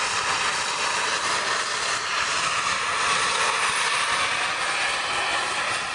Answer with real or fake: real